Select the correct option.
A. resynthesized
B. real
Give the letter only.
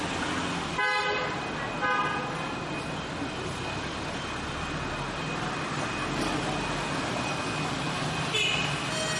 B